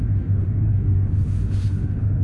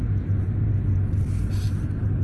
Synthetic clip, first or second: first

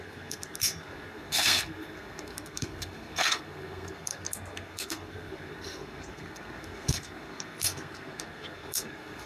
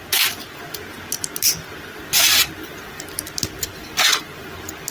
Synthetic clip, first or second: first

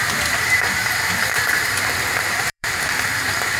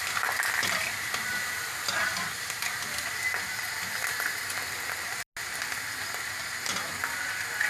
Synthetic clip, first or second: first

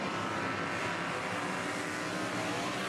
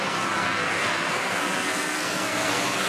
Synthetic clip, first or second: second